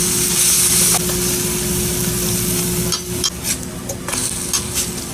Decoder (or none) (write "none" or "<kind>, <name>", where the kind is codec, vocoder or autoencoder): none